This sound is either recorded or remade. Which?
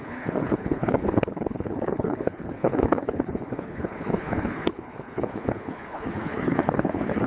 remade